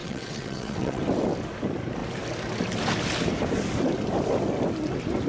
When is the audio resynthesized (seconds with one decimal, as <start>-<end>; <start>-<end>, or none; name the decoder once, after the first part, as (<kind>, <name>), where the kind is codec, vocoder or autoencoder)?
0.0-1.0 (vocoder, WaveNeXt)